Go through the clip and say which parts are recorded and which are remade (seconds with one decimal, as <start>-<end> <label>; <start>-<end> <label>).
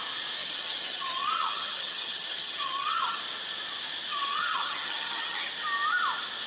0.0-0.4 recorded; 0.4-3.2 remade; 3.2-4.1 recorded; 4.1-5.5 remade; 5.5-6.5 recorded